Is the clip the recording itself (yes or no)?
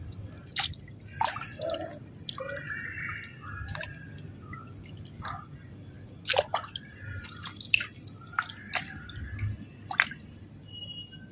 yes